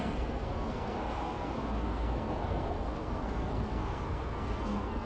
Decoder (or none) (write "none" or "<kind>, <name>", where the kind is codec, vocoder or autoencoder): codec, SNAC